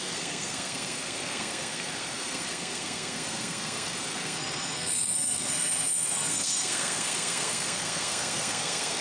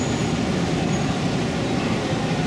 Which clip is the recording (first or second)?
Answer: second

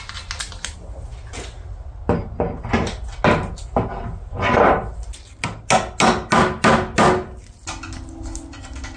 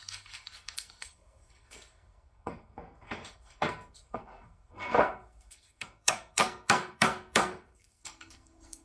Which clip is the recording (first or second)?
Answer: first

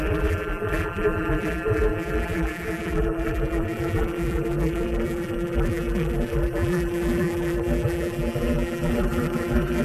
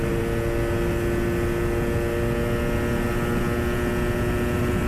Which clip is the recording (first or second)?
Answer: second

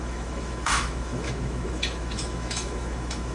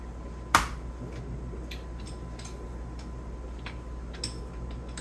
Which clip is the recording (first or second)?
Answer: second